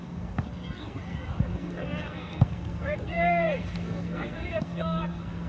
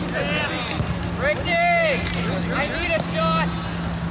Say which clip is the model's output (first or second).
first